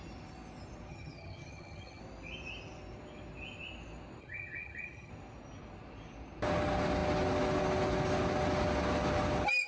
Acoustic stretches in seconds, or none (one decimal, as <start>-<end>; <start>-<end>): 0.0-0.9; 2.0-4.2; 5.1-9.7